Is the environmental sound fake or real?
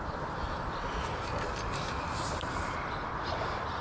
real